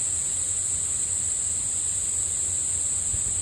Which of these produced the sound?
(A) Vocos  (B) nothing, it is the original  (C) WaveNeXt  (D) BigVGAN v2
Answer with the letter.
B